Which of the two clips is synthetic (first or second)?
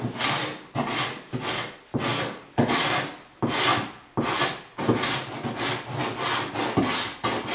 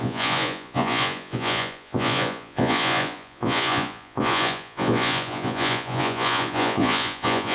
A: second